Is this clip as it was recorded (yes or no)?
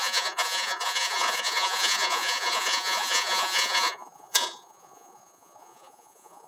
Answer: no